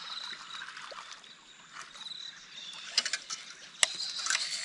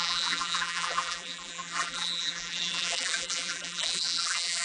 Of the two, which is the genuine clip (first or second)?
first